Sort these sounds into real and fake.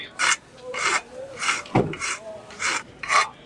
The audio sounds fake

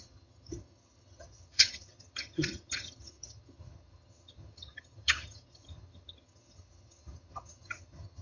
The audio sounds fake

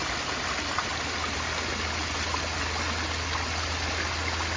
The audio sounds real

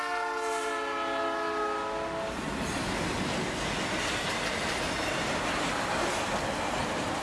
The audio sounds real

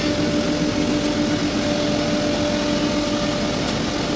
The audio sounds real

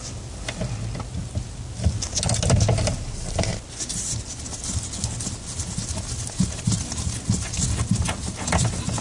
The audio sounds real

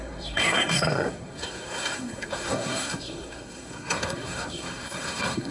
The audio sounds fake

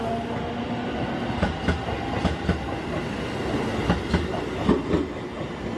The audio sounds real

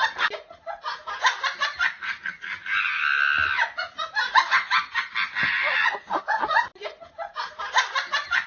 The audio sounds real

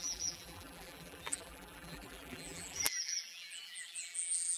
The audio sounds fake